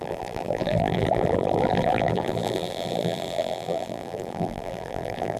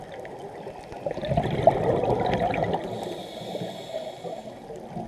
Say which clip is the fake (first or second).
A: first